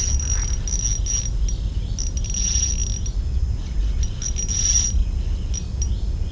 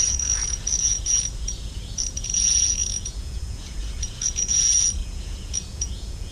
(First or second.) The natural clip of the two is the first